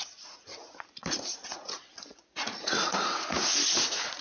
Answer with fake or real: fake